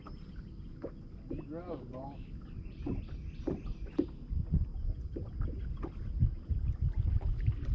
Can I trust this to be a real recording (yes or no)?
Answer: yes